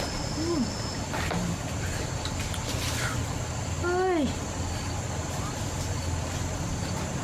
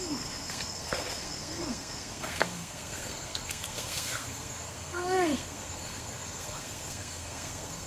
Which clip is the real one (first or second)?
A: first